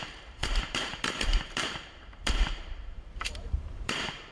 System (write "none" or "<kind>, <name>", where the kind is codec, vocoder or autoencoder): vocoder, BigVGAN v2